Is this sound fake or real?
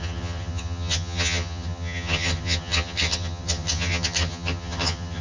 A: fake